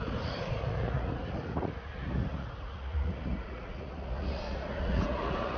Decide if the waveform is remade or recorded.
remade